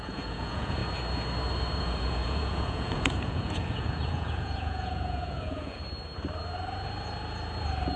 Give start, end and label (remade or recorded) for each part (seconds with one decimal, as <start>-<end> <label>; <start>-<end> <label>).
0.0-0.8 remade; 0.8-1.8 recorded; 1.8-5.8 remade; 5.8-8.0 recorded